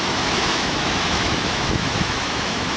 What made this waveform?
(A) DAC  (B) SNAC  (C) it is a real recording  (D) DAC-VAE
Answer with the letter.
D